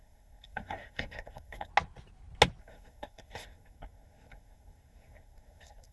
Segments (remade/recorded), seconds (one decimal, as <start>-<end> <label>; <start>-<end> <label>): 0.0-1.7 remade; 1.7-2.6 recorded; 2.6-5.9 remade